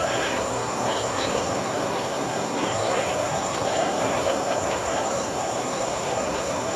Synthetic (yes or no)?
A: yes